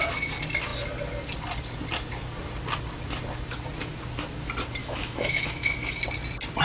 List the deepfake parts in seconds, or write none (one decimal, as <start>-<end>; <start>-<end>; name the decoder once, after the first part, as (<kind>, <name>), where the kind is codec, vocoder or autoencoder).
4.8-6.0 (autoencoder, DAC-VAE)